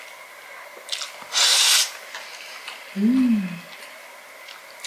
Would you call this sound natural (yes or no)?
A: yes